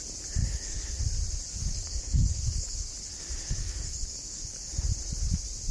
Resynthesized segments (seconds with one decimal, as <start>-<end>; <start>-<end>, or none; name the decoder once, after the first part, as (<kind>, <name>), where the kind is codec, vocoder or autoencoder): 0.4-0.9 (codec, DAC); 1.6-2.9; 3.6-4.7